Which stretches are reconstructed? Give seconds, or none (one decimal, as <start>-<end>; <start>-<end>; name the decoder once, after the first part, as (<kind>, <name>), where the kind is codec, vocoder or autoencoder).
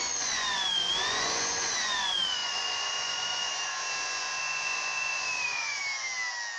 0.0-5.8 (vocoder, Vocos)